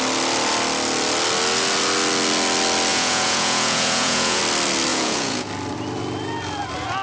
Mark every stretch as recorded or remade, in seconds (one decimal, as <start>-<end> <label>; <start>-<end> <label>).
0.0-2.9 recorded; 2.9-4.4 remade; 4.4-4.9 recorded; 4.9-5.5 remade; 5.5-7.0 recorded